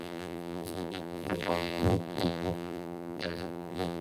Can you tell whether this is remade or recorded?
remade